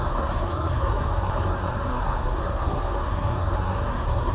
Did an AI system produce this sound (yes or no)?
yes